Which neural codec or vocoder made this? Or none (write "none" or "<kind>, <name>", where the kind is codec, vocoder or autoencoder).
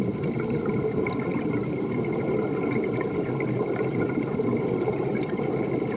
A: none